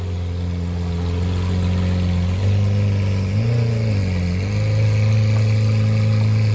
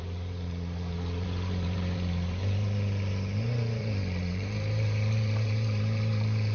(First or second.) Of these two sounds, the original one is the first